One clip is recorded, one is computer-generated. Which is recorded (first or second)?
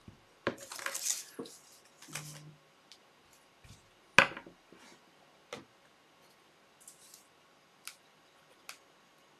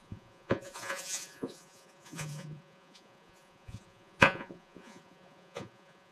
first